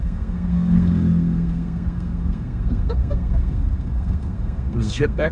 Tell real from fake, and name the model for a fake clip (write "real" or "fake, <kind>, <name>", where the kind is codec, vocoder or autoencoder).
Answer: fake, codec, SNAC